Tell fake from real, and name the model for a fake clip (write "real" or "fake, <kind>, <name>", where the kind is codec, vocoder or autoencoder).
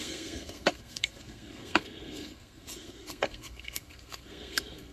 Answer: fake, codec, SNAC